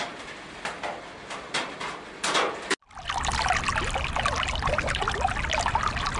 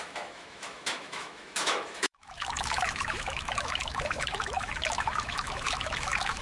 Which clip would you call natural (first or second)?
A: first